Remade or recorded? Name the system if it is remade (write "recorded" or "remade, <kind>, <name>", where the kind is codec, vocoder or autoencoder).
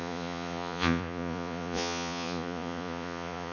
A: remade, vocoder, Vocos